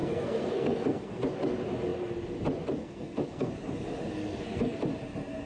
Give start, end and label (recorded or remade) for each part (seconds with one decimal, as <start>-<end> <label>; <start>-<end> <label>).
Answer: 0.0-1.2 remade; 1.2-2.8 recorded; 2.8-3.5 remade; 3.5-4.2 recorded; 4.2-4.8 remade; 4.8-5.5 recorded